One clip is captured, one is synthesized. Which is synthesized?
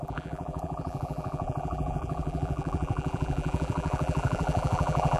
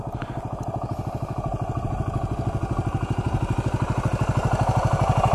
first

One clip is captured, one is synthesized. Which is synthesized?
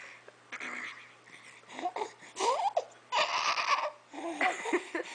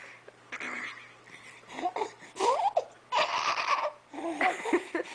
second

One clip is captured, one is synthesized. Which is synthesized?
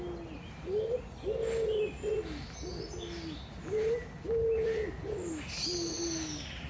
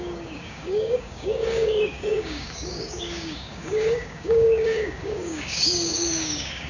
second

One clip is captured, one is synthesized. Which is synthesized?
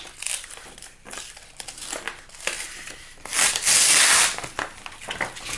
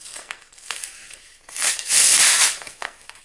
second